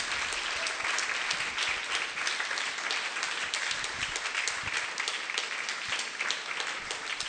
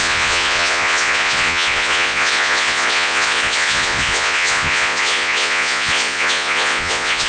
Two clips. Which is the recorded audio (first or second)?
first